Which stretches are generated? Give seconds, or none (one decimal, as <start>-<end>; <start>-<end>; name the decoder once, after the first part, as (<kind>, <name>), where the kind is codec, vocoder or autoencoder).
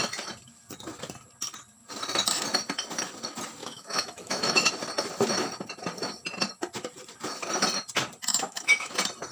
3.6-4.7 (autoencoder, DAC-VAE); 8.3-8.9